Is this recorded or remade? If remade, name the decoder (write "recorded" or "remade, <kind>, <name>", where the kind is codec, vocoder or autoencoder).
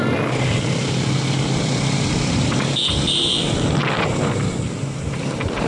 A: recorded